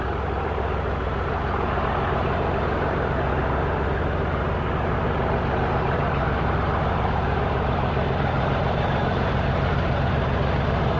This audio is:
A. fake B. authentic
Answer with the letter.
A